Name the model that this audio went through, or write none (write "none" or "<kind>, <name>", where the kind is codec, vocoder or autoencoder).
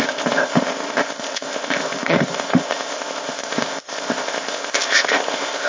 codec, ZipCodec